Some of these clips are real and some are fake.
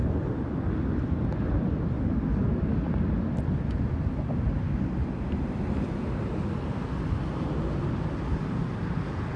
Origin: real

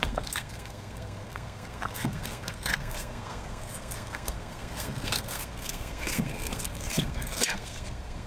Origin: fake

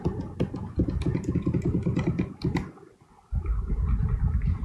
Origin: real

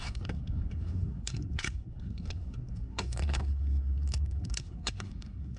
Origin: fake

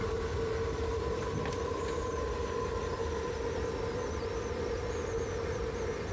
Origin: real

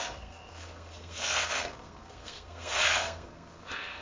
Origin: fake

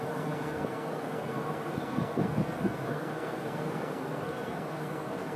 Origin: fake